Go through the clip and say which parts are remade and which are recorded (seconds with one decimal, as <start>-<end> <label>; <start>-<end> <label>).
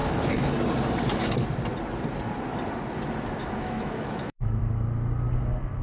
0.0-0.5 remade; 0.5-3.4 recorded; 3.4-4.6 remade; 4.6-5.8 recorded